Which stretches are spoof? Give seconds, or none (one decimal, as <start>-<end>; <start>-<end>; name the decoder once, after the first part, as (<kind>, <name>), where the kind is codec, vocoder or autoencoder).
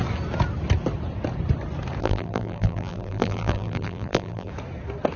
2.0-4.5 (vocoder, BigVGAN v2)